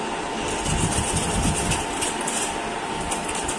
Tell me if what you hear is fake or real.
real